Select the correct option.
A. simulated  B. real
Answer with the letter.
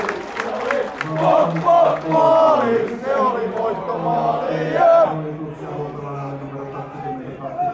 B